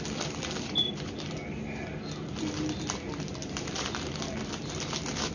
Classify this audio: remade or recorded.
recorded